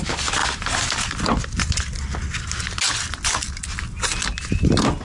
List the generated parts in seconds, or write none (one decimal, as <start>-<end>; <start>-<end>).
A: none